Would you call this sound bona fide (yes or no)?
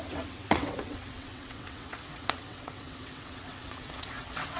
no